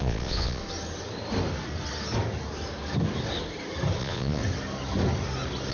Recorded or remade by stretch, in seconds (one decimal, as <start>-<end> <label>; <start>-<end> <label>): 0.0-0.6 remade; 0.6-4.0 recorded; 4.0-4.4 remade; 4.4-5.7 recorded